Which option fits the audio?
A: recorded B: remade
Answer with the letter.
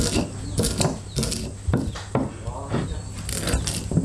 A